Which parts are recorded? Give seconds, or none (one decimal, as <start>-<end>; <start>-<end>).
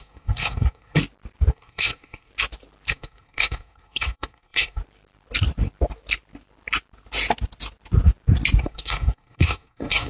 1.0-1.5; 2.3-2.9; 4.8-8.6